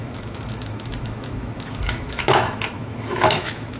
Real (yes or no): no